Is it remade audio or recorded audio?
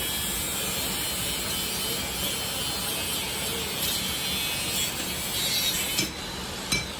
recorded